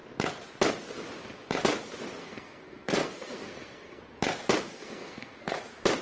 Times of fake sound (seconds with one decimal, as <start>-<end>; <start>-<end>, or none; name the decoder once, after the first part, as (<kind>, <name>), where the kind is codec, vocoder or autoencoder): 2.2-4.0 (codec, SNAC); 4.7-5.6